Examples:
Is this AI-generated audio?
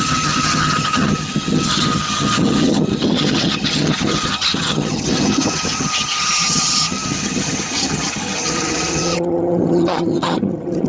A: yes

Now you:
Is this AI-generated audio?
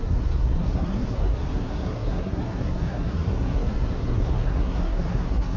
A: yes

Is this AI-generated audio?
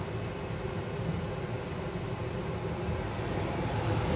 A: no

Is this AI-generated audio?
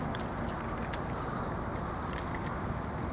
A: no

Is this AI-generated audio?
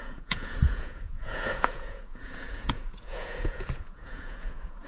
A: yes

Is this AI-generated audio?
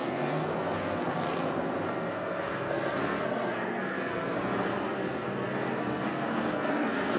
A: yes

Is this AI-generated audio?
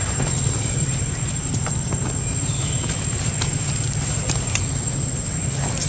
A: yes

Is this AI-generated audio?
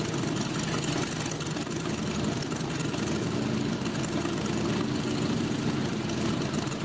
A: no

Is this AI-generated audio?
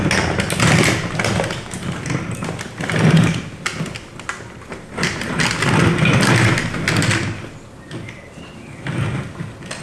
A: no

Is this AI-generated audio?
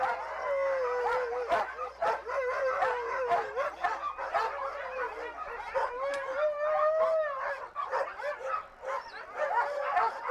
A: no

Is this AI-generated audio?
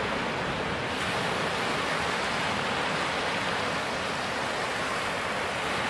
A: no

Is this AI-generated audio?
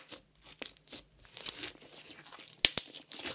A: no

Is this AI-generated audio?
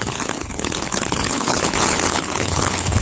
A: yes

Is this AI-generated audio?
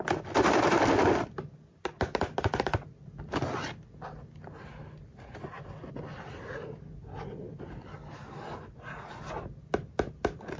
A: no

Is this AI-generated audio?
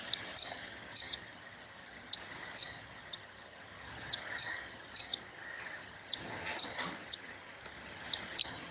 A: yes